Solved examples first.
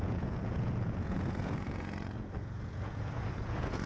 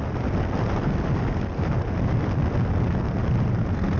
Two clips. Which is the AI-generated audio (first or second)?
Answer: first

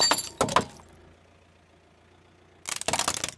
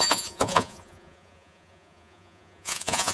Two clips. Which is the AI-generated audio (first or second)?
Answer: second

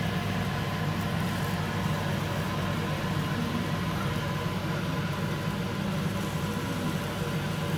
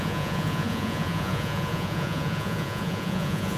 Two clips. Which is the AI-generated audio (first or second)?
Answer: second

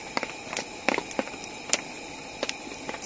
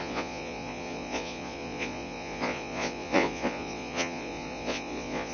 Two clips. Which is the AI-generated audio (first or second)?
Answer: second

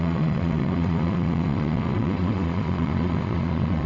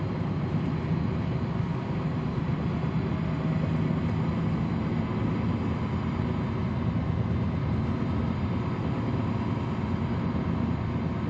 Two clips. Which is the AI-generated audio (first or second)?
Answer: first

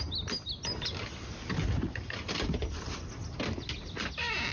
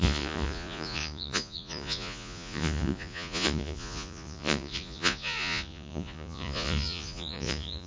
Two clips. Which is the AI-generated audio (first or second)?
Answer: second